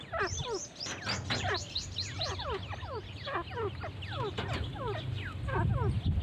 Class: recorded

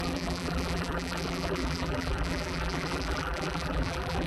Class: remade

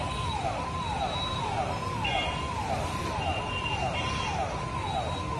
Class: recorded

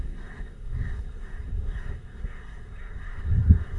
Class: remade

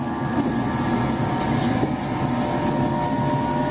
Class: recorded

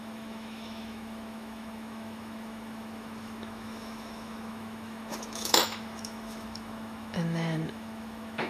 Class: remade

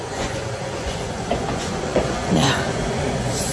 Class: remade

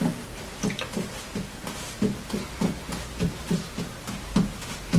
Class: recorded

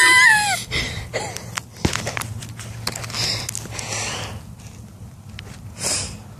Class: recorded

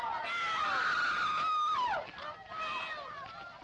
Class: recorded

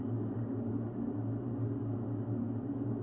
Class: recorded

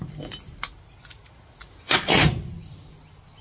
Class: recorded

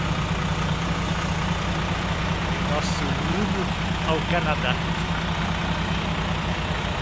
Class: recorded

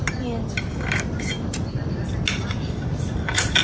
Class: recorded